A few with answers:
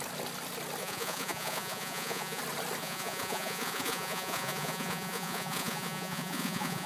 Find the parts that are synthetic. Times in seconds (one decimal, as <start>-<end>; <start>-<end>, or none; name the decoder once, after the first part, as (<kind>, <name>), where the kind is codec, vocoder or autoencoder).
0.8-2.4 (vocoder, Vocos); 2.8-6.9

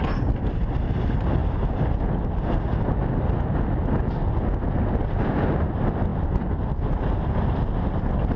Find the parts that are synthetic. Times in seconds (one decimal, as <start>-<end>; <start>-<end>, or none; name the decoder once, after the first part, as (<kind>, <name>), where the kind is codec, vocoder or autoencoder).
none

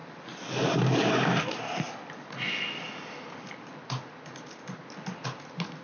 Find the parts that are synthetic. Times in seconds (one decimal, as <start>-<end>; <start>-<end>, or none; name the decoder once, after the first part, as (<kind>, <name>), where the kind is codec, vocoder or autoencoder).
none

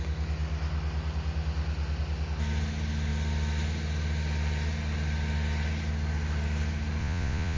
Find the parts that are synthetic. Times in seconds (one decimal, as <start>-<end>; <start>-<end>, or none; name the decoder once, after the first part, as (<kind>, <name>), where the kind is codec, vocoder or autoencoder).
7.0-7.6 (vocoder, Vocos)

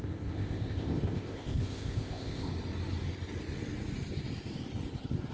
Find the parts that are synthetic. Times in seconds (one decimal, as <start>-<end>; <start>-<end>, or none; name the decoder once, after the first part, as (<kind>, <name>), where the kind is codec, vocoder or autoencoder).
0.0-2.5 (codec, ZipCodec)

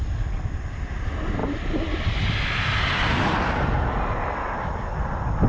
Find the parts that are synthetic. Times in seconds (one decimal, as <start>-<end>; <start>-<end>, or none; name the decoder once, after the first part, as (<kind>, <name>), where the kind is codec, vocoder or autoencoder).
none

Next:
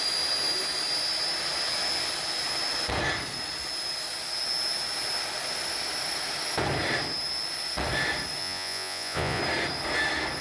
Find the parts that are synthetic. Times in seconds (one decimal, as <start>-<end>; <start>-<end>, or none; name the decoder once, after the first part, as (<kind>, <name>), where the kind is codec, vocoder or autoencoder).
8.4-9.4 (vocoder, Vocos)